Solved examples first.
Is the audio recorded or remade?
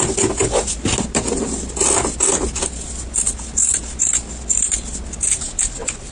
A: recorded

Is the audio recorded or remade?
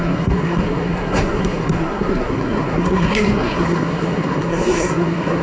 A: remade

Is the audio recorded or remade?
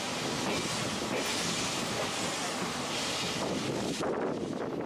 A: recorded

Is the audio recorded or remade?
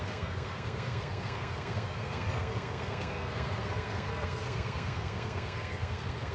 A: remade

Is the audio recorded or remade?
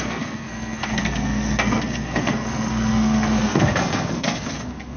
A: remade